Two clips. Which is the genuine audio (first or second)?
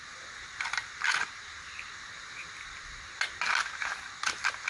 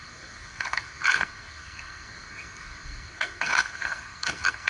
first